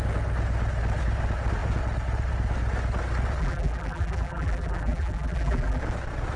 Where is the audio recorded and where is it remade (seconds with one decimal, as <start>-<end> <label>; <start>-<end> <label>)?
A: 0.0-3.4 recorded; 3.4-5.8 remade; 5.8-6.4 recorded